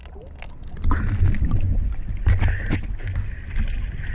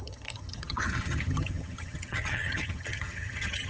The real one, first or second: first